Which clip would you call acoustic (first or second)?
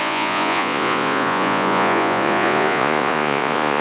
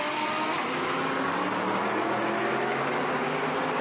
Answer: second